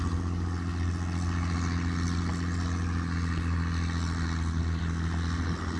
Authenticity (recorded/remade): recorded